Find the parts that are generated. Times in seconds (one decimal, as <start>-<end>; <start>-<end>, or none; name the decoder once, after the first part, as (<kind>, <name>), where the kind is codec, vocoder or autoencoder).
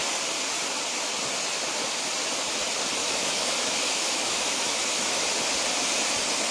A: 3.0-5.2 (autoencoder, DAC-VAE)